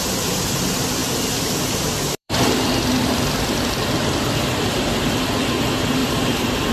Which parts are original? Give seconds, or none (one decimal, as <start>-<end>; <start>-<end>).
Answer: 0.0-1.0; 3.6-6.0